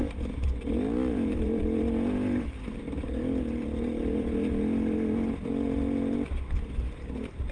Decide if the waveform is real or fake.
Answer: real